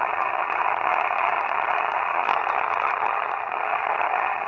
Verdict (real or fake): fake